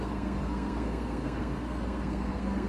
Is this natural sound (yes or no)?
no